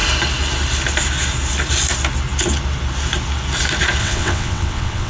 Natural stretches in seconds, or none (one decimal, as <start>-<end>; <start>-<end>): 0.0-4.0